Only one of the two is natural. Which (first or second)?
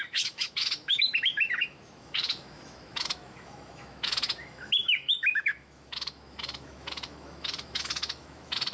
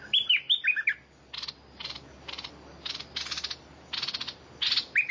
second